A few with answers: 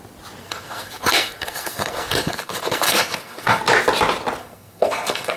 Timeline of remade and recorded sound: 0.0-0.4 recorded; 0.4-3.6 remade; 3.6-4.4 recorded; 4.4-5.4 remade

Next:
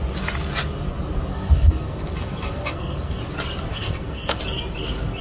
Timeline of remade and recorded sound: 0.0-1.3 recorded; 1.3-3.2 remade; 3.2-3.7 recorded; 3.7-4.4 remade; 4.4-5.2 recorded

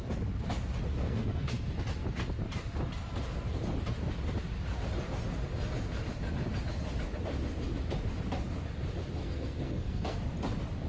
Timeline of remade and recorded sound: 0.0-0.9 recorded; 0.9-1.7 remade; 1.7-9.2 recorded; 9.2-10.2 remade; 10.2-10.9 recorded

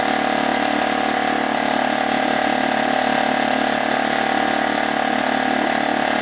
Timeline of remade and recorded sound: 0.0-6.2 recorded